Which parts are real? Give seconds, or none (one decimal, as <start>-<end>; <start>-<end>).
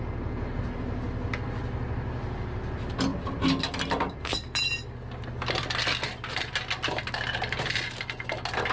0.0-8.7